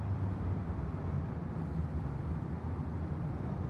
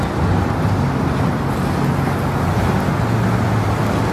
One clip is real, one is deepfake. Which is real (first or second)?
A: second